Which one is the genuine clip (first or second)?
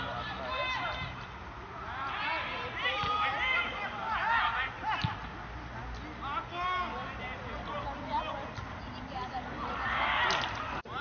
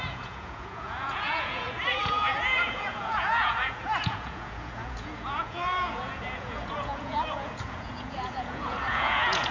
first